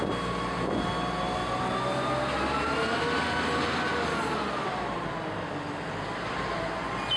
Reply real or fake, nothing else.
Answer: real